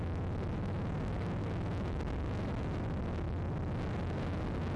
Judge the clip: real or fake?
real